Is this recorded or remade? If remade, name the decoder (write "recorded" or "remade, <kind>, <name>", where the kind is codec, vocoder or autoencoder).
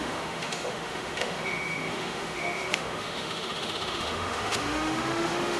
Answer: remade, autoencoder, DAC-VAE